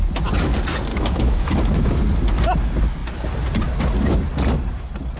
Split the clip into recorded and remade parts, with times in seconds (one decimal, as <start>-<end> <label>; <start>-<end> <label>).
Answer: 0.0-0.9 recorded; 0.9-2.0 remade; 2.0-5.2 recorded